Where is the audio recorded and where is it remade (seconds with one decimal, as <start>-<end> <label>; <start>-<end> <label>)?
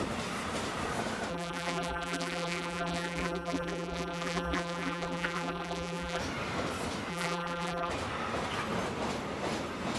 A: 0.0-1.3 recorded; 1.3-6.2 remade; 6.2-7.1 recorded; 7.1-7.9 remade; 7.9-10.0 recorded